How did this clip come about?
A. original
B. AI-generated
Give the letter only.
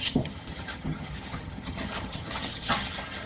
B